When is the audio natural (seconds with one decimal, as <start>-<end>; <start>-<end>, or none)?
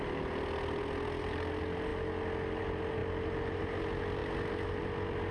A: 0.0-5.3